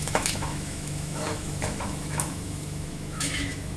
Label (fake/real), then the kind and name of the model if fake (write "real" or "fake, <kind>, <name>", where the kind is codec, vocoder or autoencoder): fake, autoencoder, DAC-VAE